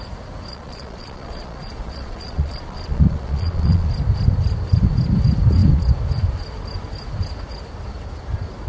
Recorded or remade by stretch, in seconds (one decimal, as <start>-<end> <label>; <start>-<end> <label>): 0.0-0.5 recorded; 0.5-3.9 remade; 3.9-8.7 recorded